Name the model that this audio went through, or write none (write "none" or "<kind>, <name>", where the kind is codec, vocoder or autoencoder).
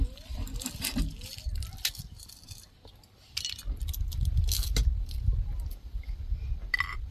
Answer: none